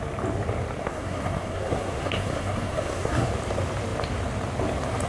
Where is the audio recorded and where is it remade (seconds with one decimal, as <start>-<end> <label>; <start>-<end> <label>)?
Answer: 0.0-0.8 recorded; 0.8-3.3 remade; 3.3-5.1 recorded